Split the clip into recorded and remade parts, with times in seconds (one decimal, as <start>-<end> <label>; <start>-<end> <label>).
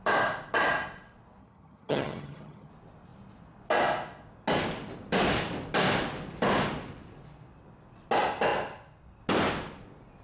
0.0-1.4 recorded; 1.4-2.7 remade; 2.7-10.2 recorded